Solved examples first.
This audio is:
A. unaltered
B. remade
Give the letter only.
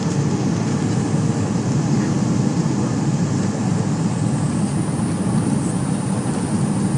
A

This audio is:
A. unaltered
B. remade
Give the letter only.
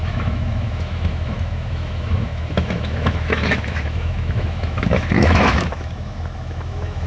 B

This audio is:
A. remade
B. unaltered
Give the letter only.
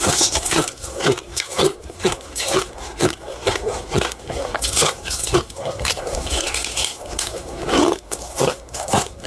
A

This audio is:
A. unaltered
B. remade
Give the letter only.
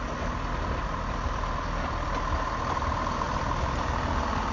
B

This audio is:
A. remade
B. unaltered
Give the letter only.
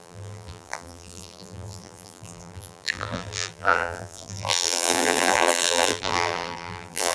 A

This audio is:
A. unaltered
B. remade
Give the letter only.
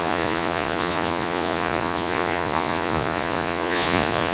B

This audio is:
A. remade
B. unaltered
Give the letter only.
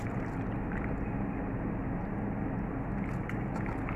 B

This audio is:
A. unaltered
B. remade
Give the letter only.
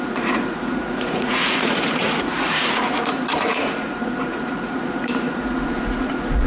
B